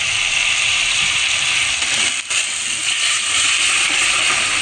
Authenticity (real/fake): real